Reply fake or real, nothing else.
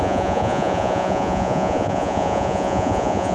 fake